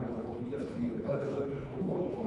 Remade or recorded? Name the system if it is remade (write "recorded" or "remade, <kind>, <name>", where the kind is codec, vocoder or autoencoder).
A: remade, codec, HILCodec